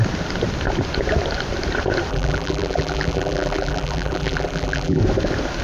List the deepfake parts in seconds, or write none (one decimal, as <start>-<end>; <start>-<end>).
2.1-5.0